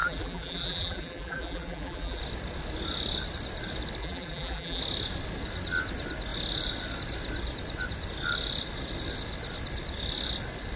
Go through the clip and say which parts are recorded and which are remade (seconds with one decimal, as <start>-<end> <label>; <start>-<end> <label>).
0.0-2.2 remade; 2.2-4.0 recorded; 4.0-4.8 remade; 4.8-10.8 recorded